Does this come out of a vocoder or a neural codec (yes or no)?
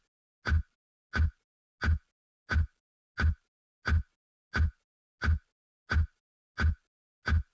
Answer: no